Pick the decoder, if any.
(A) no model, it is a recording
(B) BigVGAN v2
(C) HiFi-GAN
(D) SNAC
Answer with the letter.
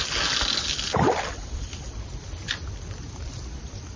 A